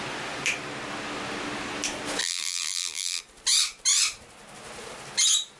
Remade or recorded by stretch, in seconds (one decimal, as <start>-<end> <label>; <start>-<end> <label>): 0.0-2.2 recorded; 2.2-3.2 remade; 3.2-5.6 recorded